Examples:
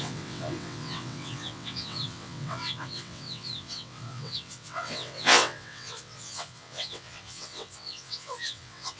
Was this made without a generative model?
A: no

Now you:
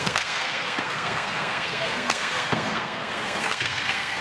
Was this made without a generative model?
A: no